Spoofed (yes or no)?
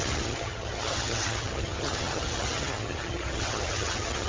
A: yes